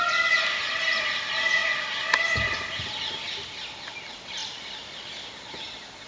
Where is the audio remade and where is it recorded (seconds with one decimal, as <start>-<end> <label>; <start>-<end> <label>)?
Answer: 0.0-6.1 recorded